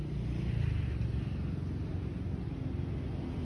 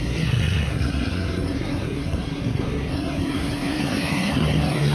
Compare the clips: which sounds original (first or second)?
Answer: first